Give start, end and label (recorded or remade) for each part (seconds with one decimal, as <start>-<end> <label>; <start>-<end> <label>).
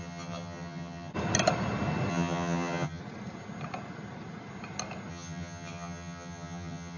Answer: 0.0-1.1 remade; 1.1-2.1 recorded; 2.1-3.0 remade; 3.0-5.1 recorded; 5.1-7.0 remade